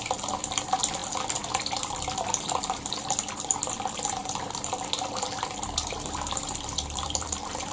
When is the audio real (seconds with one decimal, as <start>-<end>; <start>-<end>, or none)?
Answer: 4.2-5.4